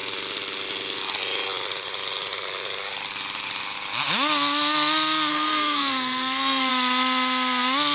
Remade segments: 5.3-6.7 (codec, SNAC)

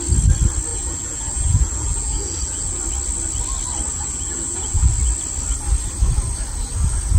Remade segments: 0.7-2.8 (vocoder, Vocos); 3.9-4.9

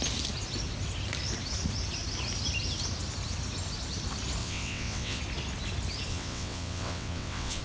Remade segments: 4.4-5.2 (vocoder, WaveNeXt); 6.1-7.6

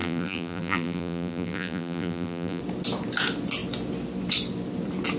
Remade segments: 0.0-2.6 (vocoder, BigVGAN v2)

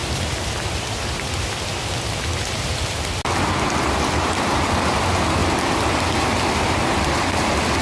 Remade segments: none

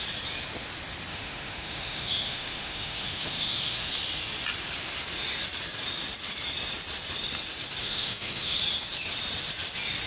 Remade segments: 1.1-3.9 (autoencoder, DAC-VAE); 7.8-8.6

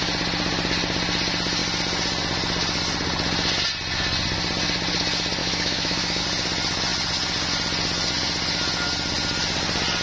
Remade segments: 5.4-6.2 (autoencoder, DAC-VAE)